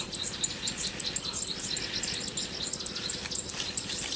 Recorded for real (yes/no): yes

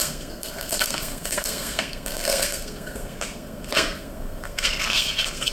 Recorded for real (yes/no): no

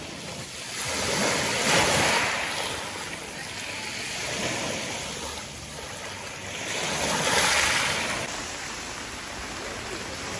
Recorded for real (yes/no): yes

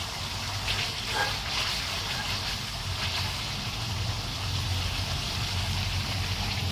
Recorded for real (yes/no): yes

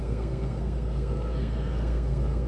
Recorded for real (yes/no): no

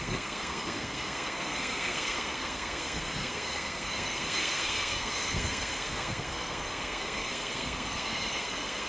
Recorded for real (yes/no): no